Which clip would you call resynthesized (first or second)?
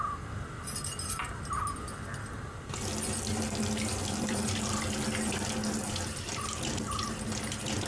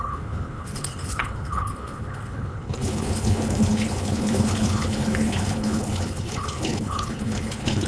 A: second